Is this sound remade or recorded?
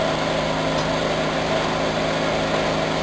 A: recorded